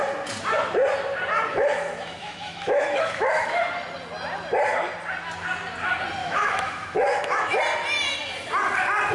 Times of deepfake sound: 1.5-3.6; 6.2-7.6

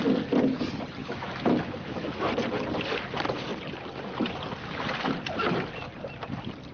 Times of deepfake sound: 1.0-2.2

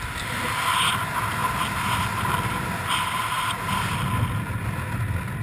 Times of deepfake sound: none

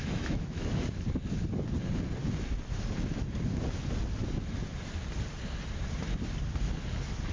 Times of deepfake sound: 0.0-0.8